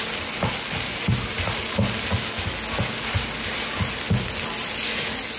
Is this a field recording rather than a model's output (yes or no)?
yes